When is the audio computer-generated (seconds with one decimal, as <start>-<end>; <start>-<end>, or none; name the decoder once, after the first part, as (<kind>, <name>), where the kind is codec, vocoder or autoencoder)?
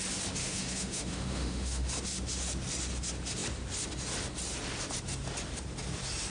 0.4-1.9 (autoencoder, DAC-VAE)